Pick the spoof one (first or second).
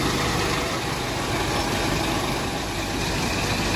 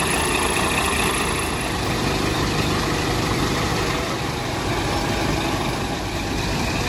second